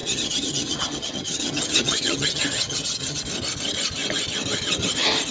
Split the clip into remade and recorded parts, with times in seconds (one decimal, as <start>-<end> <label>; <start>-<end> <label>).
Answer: 0.0-3.2 remade; 3.2-5.3 recorded